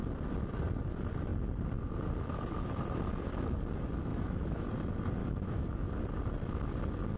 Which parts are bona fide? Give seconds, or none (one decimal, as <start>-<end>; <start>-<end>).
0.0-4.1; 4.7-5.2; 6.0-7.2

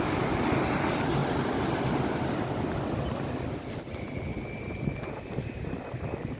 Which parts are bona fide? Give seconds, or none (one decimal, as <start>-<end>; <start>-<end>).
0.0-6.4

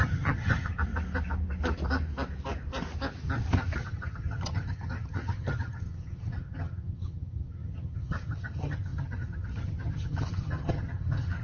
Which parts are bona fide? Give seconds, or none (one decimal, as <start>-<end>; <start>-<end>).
0.8-3.8

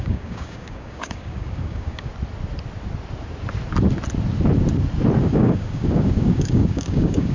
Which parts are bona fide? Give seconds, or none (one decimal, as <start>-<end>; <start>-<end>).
2.1-5.2

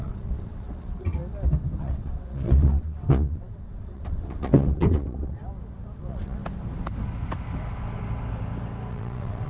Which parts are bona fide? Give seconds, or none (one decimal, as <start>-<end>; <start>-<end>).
1.2-1.8; 5.4-6.0; 6.4-8.9